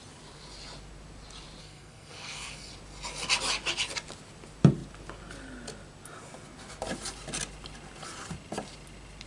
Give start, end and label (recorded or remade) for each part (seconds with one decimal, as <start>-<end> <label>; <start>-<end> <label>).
0.0-1.6 recorded; 1.6-2.7 remade; 2.7-9.3 recorded